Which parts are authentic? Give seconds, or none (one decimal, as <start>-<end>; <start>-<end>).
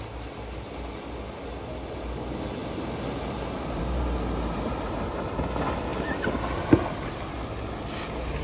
0.0-8.4